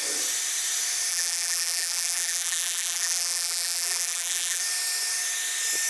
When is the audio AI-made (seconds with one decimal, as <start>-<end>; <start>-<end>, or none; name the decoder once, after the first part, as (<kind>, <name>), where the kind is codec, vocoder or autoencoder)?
1.1-4.6 (vocoder, BigVGAN v2)